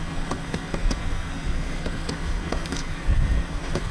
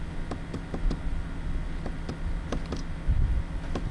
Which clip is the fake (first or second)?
first